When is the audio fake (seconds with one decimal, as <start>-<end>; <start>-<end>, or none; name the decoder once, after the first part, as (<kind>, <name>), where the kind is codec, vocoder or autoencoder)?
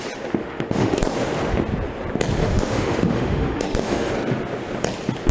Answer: 0.4-1.0 (autoencoder, DAC-VAE); 2.4-4.1